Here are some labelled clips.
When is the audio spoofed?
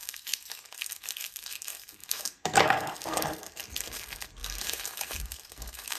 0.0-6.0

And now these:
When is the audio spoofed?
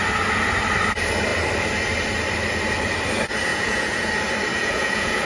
3.5-4.1; 4.5-5.2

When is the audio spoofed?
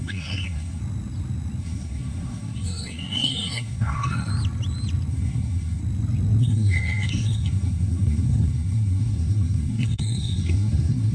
0.0-0.8; 1.6-4.3; 5.1-5.8; 6.4-11.1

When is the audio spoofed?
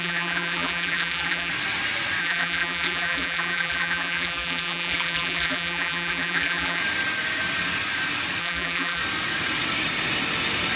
0.0-1.5; 2.2-6.8; 8.4-9.0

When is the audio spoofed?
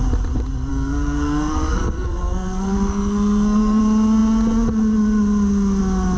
0.7-3.8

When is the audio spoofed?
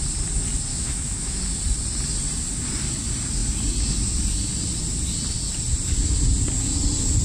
0.7-1.4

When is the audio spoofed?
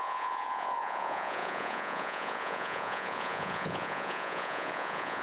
0.0-5.2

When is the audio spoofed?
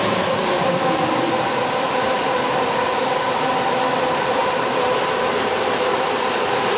0.0-6.8